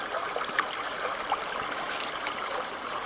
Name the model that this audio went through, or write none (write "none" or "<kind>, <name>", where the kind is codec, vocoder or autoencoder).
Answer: none